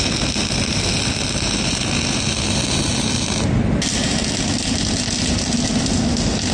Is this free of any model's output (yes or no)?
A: yes